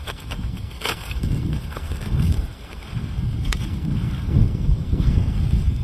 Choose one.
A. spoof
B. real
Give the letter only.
A